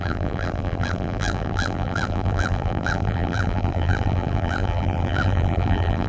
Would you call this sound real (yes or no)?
no